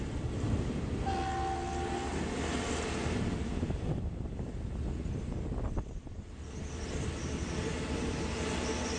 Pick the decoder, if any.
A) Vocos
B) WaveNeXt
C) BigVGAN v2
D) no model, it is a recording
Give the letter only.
D